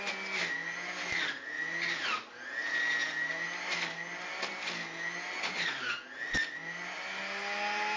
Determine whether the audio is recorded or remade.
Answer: recorded